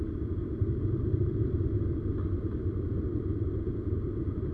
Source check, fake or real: real